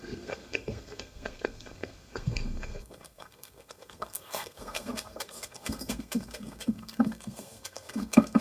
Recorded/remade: remade